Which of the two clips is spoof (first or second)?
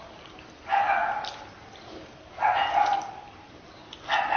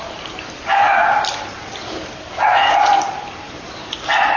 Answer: second